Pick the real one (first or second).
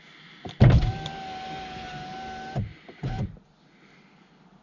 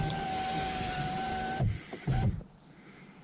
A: first